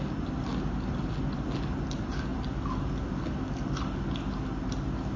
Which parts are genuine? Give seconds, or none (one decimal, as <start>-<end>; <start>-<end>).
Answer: 0.0-5.2